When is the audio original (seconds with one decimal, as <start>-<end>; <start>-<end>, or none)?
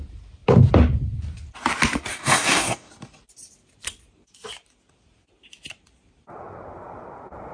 0.0-2.1; 2.9-7.5